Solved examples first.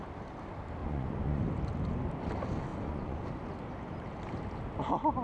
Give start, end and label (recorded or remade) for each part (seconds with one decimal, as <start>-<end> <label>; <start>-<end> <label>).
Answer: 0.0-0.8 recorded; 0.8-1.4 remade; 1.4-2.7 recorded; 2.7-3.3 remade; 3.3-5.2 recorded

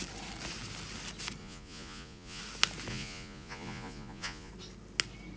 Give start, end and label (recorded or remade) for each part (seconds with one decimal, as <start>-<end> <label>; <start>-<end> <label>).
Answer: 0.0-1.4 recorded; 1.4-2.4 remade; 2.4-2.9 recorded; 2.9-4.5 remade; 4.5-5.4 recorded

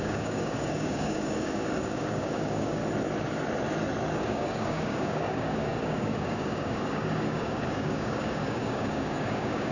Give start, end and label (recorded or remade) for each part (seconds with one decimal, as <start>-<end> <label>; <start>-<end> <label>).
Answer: 0.0-2.8 remade; 2.8-4.2 recorded; 4.2-9.7 remade

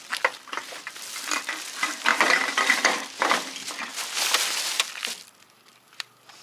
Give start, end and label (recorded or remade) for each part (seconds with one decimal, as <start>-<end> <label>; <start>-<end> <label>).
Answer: 0.0-6.4 recorded

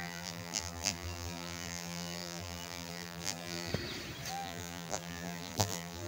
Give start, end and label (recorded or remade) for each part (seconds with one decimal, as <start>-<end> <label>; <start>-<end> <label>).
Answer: 0.0-3.7 remade; 3.7-4.3 recorded; 4.3-6.1 remade